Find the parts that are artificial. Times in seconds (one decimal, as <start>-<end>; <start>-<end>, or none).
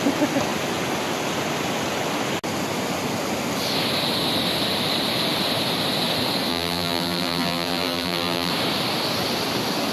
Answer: 6.5-8.5